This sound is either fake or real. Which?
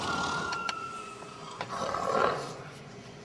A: fake